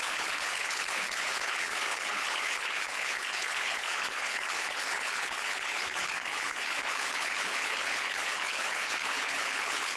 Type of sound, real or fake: fake